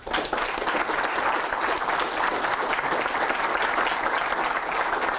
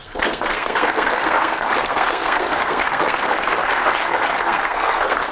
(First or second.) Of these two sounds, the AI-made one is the second